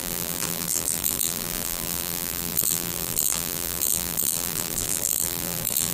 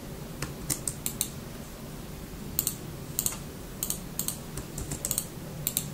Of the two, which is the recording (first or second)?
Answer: second